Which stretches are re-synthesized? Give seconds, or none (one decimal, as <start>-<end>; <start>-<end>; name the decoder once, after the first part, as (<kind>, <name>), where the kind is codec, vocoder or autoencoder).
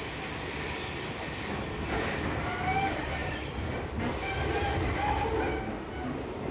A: none